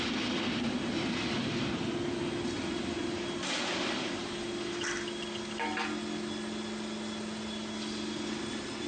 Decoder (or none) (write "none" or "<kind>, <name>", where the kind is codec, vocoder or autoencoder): none